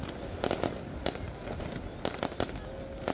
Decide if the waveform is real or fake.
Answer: real